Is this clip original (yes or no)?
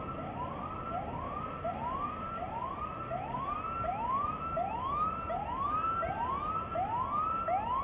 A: yes